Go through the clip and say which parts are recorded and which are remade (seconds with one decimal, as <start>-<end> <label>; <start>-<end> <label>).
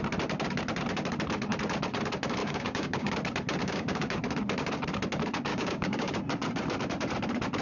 0.0-2.4 recorded; 2.4-3.1 remade; 3.1-3.6 recorded; 3.6-4.2 remade; 4.2-5.5 recorded; 5.5-6.1 remade; 6.1-7.6 recorded